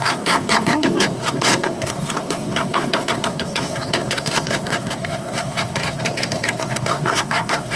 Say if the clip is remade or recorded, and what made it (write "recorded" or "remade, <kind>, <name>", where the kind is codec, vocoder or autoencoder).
remade, codec, SNAC